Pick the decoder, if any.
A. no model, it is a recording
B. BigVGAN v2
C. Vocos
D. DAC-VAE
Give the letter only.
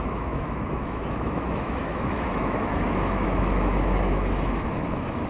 D